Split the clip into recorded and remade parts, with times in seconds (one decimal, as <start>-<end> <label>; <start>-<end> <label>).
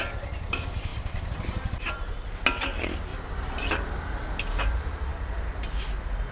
0.0-0.9 recorded; 0.9-2.3 remade; 2.3-3.1 recorded; 3.1-3.7 remade; 3.7-6.3 recorded